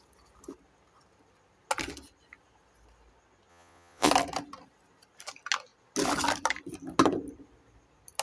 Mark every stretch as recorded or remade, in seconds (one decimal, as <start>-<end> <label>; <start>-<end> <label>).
0.0-3.5 recorded; 3.5-4.1 remade; 4.1-8.2 recorded